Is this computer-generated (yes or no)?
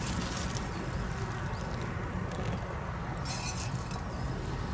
no